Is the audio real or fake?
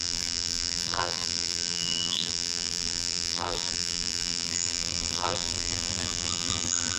fake